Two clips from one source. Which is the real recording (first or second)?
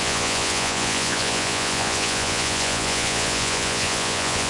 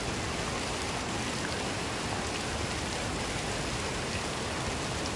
second